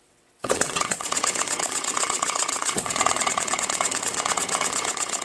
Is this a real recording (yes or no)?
no